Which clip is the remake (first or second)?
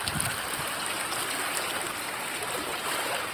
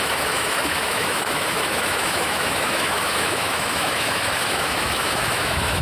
second